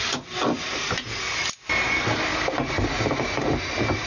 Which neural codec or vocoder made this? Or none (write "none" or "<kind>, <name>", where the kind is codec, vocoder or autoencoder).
none